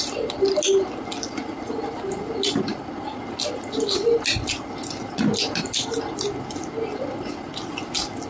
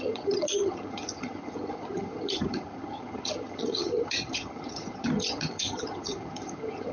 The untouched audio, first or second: first